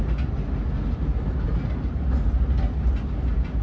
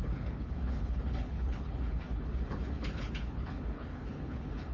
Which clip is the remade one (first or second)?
second